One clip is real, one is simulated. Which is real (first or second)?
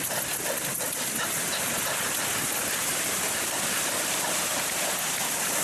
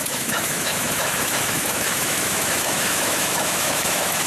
first